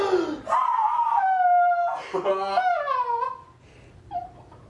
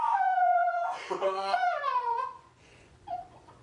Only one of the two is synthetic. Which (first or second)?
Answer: second